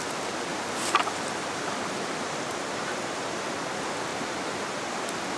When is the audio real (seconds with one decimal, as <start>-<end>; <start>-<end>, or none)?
0.0-0.5; 3.2-4.1; 5.0-5.4